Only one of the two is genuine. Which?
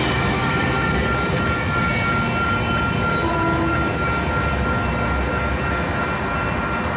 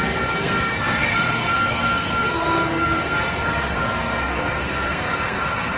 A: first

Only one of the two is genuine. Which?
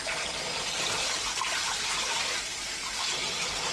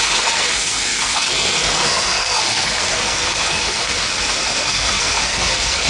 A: first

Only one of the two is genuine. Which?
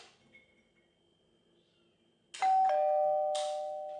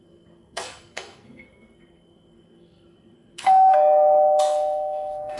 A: first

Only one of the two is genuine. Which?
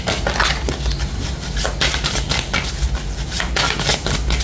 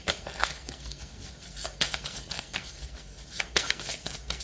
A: first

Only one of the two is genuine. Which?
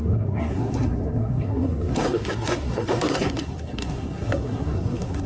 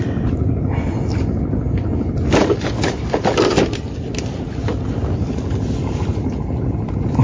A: second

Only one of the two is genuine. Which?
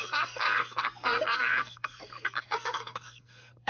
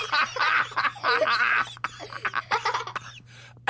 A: second